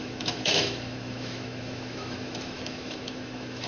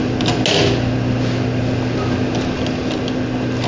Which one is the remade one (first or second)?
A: first